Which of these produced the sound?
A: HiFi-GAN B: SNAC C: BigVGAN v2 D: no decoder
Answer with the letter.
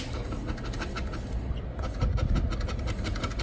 D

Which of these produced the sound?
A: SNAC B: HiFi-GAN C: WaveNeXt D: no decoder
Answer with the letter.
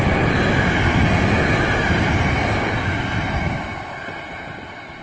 D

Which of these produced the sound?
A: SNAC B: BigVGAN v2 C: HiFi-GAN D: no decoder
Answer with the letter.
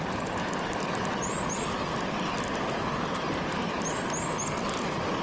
D